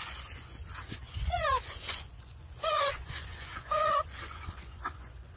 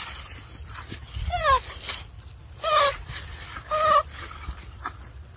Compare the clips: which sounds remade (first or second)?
first